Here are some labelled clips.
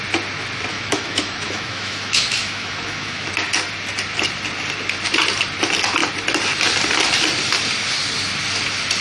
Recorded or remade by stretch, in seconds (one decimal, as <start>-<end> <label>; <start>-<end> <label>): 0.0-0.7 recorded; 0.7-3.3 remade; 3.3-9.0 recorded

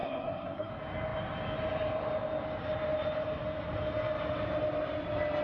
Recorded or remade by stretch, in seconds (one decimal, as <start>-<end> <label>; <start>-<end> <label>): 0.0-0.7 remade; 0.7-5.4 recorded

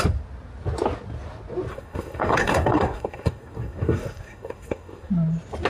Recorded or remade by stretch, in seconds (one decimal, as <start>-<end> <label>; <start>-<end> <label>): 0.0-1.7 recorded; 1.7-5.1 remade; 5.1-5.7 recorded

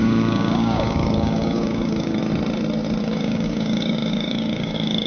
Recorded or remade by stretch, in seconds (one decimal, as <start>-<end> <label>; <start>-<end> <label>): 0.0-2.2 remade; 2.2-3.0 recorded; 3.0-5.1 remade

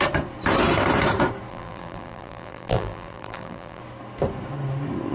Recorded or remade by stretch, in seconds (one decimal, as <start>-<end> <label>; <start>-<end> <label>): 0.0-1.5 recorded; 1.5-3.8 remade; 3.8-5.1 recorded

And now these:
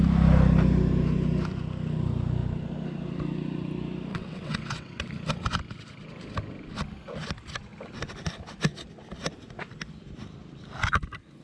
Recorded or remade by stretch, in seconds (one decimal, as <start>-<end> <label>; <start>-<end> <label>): 0.0-4.1 recorded; 4.1-5.1 remade; 5.1-11.4 recorded

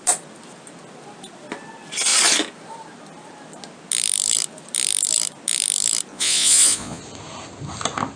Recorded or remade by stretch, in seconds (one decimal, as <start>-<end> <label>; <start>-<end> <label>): 0.0-6.1 recorded; 6.1-7.0 remade; 7.0-8.2 recorded